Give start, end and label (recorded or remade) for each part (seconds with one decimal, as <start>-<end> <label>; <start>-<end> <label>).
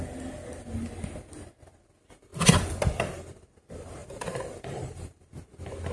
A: 0.0-4.0 recorded; 4.0-5.3 remade; 5.3-5.9 recorded